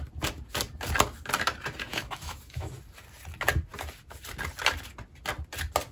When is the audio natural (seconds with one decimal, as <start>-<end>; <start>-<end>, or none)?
0.0-1.9; 2.7-5.9

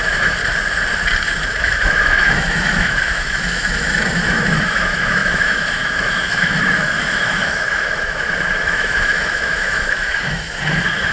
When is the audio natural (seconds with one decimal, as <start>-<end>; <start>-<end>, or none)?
0.4-1.5

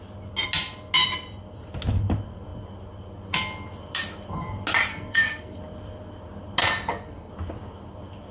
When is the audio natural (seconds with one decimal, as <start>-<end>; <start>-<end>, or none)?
0.0-4.9; 5.6-6.6; 7.3-8.3

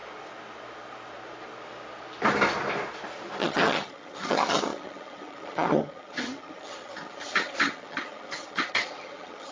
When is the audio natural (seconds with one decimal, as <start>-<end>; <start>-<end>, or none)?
0.0-3.4

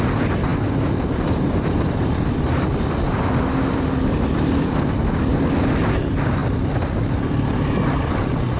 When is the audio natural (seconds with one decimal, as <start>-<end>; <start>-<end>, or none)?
0.0-8.6